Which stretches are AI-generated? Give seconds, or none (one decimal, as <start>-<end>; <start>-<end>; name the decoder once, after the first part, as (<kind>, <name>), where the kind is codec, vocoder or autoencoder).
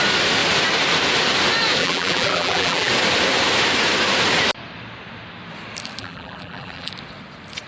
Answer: 1.8-2.9 (vocoder, BigVGAN v2); 6.0-6.9